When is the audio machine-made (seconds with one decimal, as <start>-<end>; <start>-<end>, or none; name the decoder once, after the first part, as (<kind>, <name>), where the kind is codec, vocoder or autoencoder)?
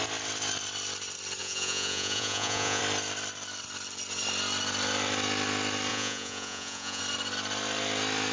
1.4-2.8 (vocoder, Vocos); 5.9-7.0